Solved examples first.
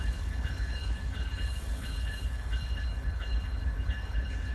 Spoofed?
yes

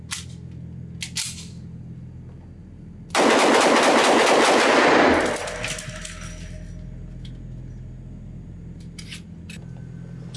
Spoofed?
no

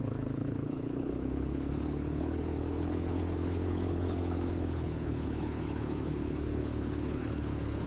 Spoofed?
yes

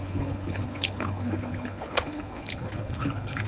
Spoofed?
yes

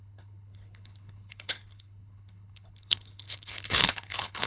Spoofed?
yes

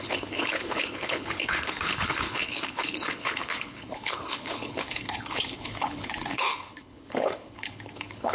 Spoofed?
yes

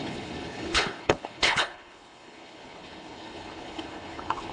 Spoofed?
yes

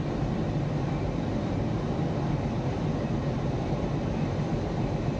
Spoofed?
no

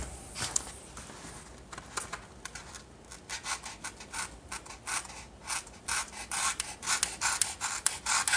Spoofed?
no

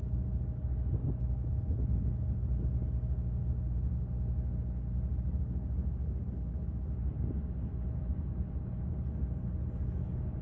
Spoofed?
no